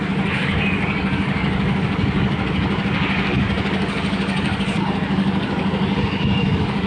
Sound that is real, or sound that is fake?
fake